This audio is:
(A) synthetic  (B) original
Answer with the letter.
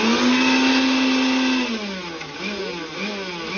B